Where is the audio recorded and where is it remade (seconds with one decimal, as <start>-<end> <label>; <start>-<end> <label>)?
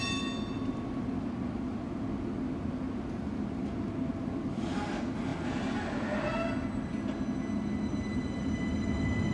0.0-9.3 recorded